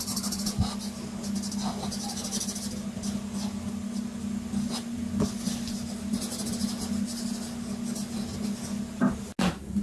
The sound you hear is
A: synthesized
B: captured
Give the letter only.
B